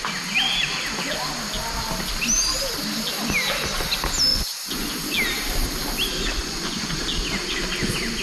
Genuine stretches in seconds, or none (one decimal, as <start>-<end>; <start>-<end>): 0.0-4.3; 4.9-6.4; 7.0-8.2

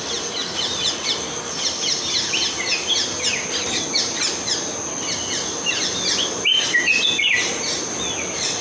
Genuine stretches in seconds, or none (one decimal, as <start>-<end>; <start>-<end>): 0.0-0.4; 1.1-8.6

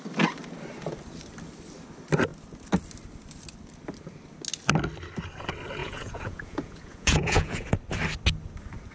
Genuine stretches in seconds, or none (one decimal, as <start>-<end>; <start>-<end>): 0.0-5.8; 7.8-8.9

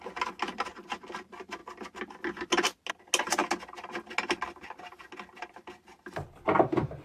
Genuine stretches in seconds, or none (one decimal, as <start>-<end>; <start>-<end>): 0.0-7.0

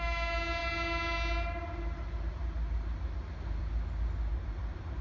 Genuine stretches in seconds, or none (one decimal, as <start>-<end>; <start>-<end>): 0.0-4.3

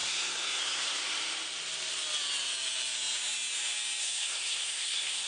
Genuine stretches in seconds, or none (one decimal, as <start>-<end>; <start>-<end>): 1.0-4.0